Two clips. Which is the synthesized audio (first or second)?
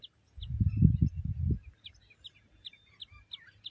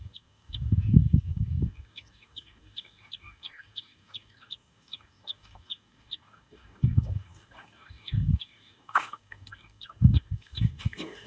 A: second